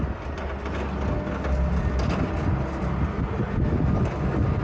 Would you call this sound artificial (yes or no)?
no